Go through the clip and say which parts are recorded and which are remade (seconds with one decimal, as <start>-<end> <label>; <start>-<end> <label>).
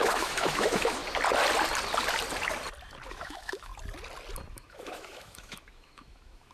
0.0-1.0 remade; 1.0-3.1 recorded; 3.1-3.7 remade; 3.7-4.5 recorded; 4.5-6.5 remade